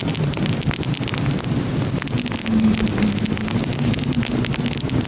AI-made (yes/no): no